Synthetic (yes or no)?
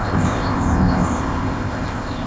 yes